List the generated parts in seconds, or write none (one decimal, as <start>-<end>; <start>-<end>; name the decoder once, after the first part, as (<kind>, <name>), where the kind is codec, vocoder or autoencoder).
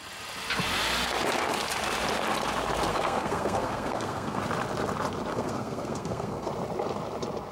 2.9-4.4 (codec, SNAC); 5.3-6.5